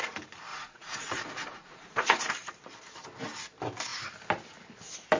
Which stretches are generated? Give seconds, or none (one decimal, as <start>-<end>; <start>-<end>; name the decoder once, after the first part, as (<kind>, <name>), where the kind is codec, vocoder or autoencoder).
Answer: 0.5-2.3 (vocoder, Vocos)